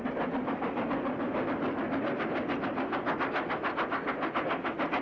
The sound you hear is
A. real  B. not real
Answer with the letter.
A